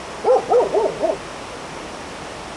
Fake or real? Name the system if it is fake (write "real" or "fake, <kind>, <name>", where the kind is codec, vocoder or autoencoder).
real